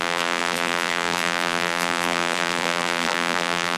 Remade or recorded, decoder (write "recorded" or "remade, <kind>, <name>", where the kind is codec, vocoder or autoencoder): remade, vocoder, BigVGAN v2